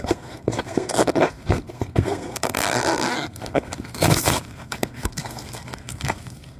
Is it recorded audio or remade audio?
remade